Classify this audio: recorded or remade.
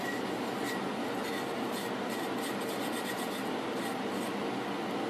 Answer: recorded